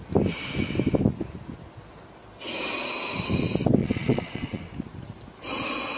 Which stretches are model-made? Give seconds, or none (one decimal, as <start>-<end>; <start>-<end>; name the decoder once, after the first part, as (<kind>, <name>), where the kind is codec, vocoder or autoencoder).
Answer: 3.8-4.6 (vocoder, Vocos)